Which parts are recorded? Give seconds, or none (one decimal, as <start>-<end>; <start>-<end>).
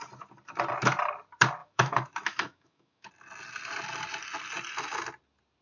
0.0-1.6; 3.1-5.6